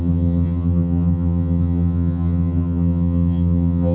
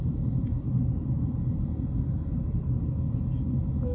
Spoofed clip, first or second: first